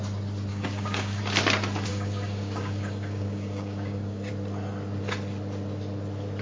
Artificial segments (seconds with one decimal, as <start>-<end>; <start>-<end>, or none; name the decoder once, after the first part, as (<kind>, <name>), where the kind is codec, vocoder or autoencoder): 0.5-1.2 (codec, DAC); 1.9-4.3